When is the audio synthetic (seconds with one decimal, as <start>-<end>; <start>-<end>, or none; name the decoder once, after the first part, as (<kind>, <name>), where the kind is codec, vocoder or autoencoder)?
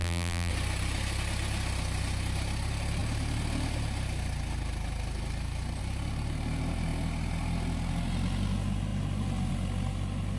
0.0-0.5 (vocoder, BigVGAN v2)